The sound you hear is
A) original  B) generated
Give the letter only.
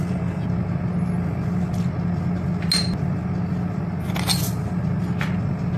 A